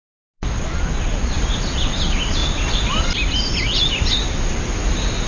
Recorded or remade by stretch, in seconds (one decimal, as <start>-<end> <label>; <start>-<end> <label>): 0.0-5.3 recorded